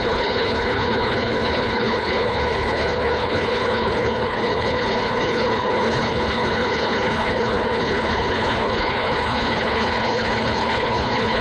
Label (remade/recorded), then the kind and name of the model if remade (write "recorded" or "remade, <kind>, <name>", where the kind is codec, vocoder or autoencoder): remade, codec, HILCodec